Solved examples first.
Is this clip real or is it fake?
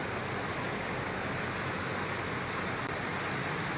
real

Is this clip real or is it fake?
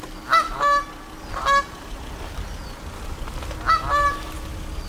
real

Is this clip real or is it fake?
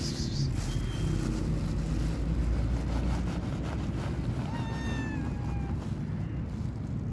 real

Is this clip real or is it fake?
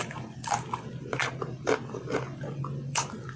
fake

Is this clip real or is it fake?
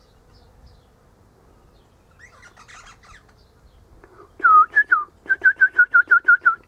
real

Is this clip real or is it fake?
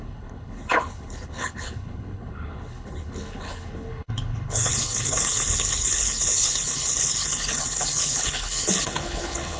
fake